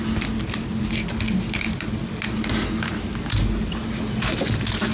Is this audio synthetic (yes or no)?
no